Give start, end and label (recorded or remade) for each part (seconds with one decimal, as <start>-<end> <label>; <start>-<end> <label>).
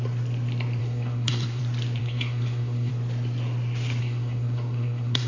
0.0-0.8 recorded; 0.8-1.6 remade; 1.6-2.0 recorded; 2.0-2.9 remade; 2.9-4.0 recorded; 4.0-5.3 remade